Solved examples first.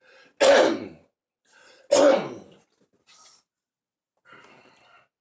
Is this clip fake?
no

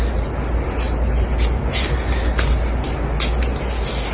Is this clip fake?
no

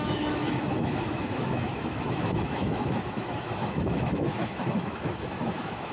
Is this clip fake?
yes